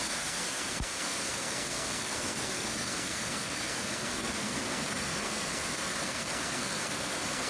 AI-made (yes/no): yes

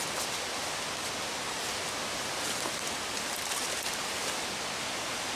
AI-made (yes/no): no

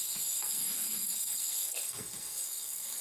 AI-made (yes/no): yes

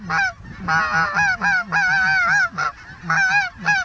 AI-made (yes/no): no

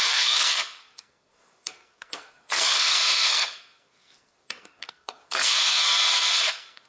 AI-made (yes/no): yes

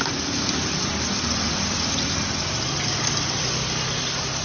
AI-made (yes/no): no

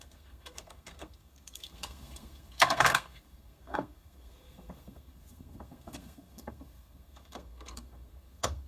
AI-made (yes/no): yes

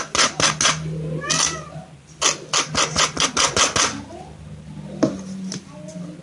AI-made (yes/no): no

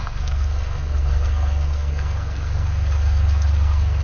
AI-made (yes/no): yes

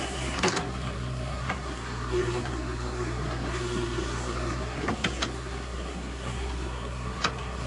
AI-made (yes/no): yes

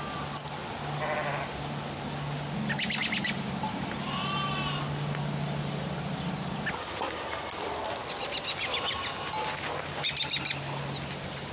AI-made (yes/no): no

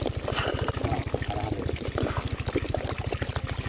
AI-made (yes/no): no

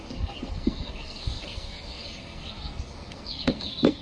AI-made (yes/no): yes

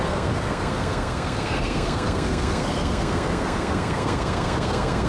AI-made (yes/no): yes